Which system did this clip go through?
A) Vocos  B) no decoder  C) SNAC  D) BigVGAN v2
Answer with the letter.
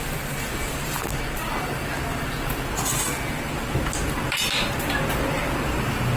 B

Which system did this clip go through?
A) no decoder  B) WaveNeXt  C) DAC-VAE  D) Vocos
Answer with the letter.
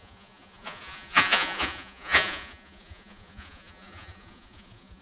D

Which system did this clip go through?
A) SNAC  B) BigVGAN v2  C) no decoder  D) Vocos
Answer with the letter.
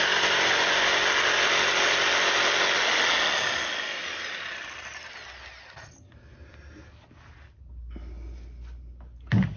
C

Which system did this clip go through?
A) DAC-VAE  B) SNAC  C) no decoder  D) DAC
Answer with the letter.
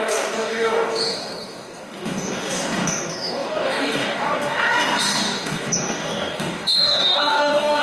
D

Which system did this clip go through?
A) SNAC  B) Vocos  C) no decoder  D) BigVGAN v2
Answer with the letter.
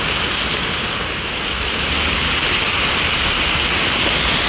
C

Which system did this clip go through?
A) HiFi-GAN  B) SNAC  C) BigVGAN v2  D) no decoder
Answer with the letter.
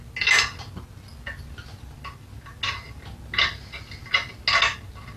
D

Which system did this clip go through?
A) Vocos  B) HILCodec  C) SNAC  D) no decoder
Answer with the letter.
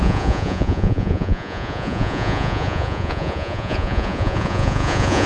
A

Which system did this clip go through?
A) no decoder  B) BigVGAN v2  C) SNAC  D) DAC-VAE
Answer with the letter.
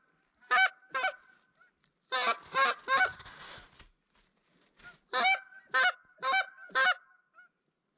A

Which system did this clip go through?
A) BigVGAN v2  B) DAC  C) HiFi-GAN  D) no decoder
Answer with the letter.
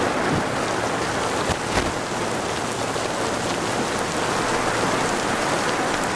D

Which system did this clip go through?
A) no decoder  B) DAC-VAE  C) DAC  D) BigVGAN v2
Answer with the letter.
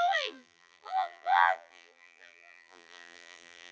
D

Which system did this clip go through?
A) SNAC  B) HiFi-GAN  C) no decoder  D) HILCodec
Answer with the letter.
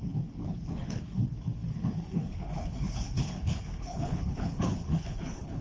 D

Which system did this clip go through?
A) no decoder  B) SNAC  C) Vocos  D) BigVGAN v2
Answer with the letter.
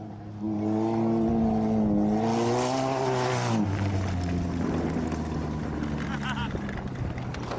A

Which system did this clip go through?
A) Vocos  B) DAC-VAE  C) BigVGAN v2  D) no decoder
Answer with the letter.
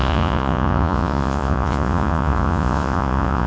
A